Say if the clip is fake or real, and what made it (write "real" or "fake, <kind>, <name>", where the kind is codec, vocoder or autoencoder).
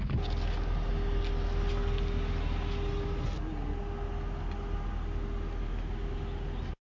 real